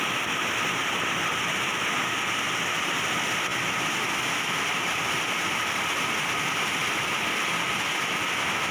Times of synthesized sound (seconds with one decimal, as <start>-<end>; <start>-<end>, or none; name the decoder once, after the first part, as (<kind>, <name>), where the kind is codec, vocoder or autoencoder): none